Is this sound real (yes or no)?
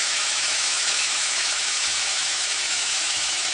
no